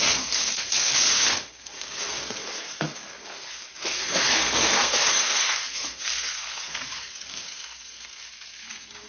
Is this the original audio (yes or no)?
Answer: no